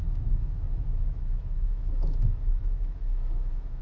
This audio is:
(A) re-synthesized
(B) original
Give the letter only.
A